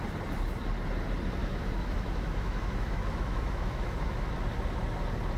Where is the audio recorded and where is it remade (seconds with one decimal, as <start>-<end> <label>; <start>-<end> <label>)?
0.0-1.4 recorded; 1.4-4.3 remade; 4.3-5.4 recorded